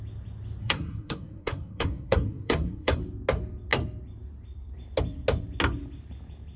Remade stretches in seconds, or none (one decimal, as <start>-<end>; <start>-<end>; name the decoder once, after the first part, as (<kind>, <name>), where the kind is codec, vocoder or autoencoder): 0.6-3.0 (codec, SNAC)